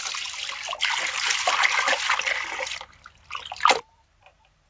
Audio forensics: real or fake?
real